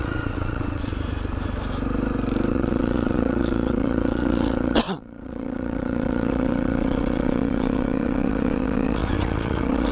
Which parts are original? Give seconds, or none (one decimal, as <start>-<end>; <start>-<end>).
0.9-2.5